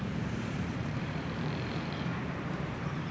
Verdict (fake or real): fake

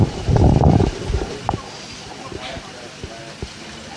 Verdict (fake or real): real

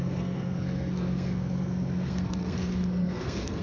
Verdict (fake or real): fake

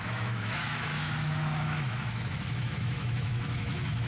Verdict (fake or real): fake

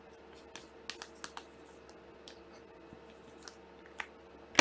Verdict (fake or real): real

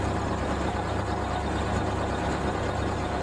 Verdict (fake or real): real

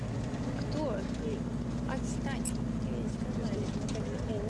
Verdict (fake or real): real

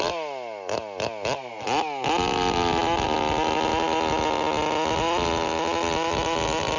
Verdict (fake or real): real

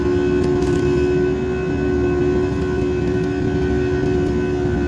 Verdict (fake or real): real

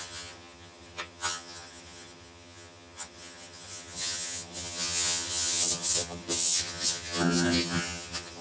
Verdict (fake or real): fake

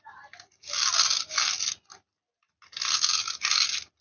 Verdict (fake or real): real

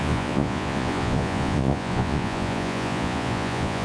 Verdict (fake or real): fake